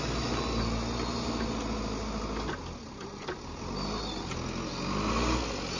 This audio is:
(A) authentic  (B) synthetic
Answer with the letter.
A